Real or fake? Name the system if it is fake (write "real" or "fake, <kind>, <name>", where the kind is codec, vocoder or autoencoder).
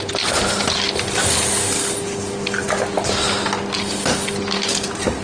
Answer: real